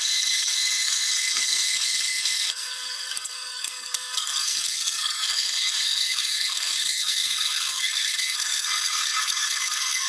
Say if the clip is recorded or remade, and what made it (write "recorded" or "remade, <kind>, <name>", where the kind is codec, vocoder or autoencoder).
remade, codec, SNAC